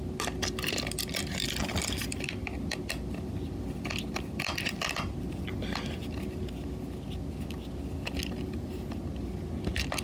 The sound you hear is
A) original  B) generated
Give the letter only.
A